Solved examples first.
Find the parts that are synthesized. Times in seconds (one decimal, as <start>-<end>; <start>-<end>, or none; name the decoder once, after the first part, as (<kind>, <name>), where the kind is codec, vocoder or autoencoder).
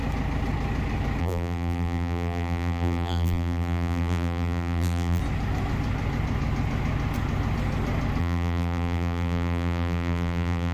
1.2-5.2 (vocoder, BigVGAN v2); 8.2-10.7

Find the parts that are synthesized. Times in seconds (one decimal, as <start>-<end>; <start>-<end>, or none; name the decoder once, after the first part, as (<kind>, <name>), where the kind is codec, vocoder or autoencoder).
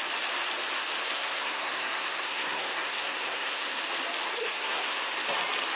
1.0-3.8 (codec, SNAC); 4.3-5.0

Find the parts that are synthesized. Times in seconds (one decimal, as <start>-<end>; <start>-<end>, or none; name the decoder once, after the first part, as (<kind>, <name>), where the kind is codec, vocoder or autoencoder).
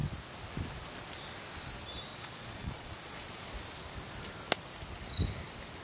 2.1-3.5 (vocoder, Vocos)